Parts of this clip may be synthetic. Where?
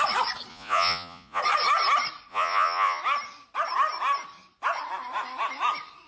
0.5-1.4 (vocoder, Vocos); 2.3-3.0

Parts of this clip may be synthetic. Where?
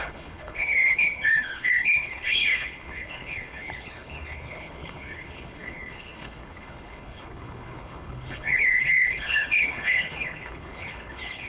0.0-11.5 (codec, HILCodec)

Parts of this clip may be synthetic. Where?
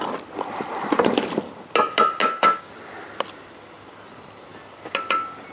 2.2-2.7 (codec, DAC)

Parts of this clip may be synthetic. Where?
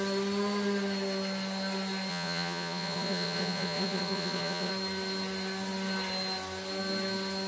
2.1-4.7 (vocoder, Vocos)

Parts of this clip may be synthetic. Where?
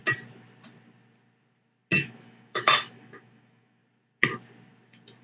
2.0-3.8 (autoencoder, DAC-VAE)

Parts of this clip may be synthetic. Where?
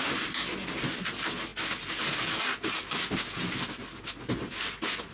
none